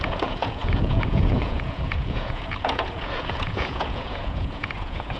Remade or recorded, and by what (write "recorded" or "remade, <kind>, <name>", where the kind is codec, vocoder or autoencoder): remade, vocoder, Vocos